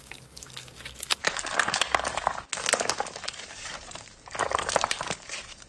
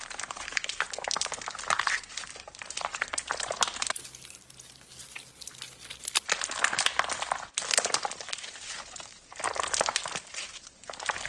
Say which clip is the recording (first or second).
second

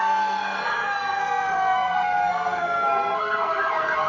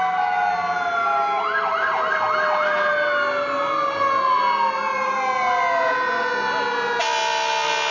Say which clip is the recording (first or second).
second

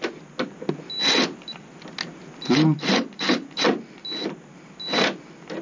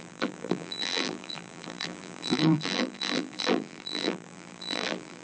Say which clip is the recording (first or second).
first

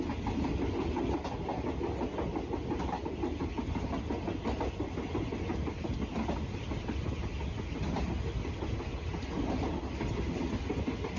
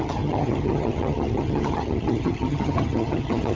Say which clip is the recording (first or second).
first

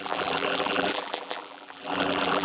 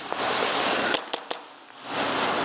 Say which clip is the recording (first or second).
second